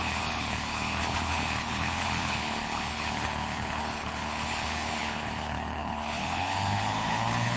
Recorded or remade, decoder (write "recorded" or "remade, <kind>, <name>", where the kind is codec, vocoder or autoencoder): remade, codec, HILCodec